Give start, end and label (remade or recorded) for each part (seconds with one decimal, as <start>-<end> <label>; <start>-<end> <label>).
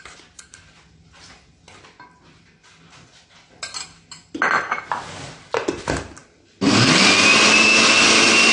0.0-8.5 recorded